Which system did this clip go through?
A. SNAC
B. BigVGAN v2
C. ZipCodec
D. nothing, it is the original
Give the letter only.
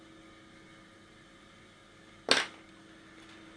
D